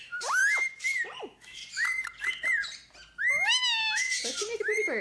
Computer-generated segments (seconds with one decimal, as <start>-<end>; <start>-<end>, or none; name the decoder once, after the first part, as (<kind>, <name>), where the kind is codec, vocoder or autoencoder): 0.0-0.4 (autoencoder, DAC-VAE); 1.2-1.6; 4.6-5.0